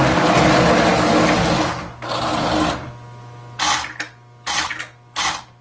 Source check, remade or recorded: recorded